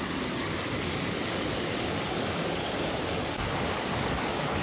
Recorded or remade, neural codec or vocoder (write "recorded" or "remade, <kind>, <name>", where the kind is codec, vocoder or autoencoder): remade, codec, DAC